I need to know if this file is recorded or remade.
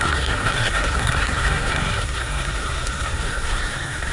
remade